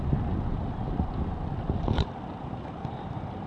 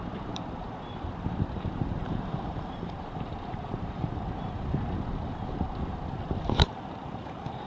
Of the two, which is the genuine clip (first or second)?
first